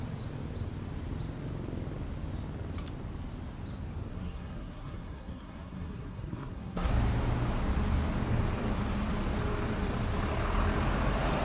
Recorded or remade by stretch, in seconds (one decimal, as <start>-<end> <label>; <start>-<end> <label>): 0.0-4.1 recorded; 4.1-6.9 remade; 6.9-11.4 recorded